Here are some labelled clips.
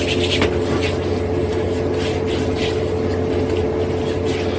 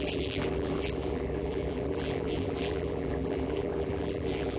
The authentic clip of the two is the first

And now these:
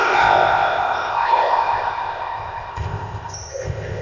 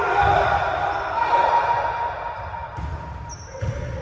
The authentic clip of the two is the second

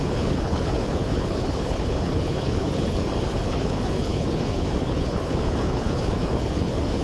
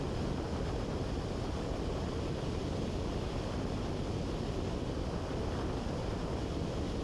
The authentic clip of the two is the second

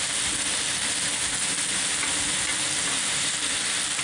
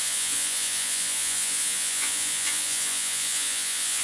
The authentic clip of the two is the first